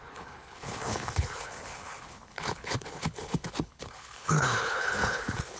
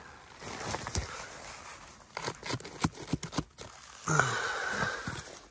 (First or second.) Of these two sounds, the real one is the second